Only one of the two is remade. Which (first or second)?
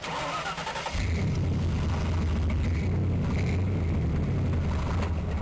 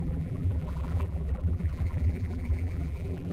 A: second